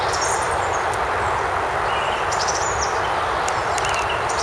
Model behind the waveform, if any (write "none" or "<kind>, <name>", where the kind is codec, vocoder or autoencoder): vocoder, BigVGAN v2